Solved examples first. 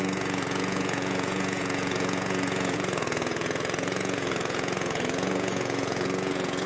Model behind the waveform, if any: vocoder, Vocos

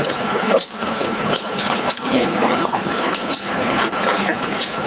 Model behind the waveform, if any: codec, HILCodec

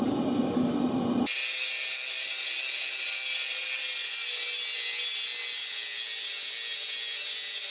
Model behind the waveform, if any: none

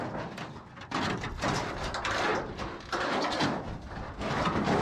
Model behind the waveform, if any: none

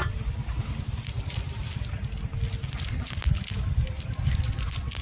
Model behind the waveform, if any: none